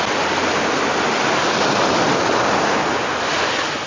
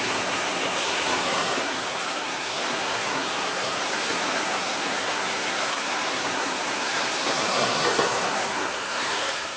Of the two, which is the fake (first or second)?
second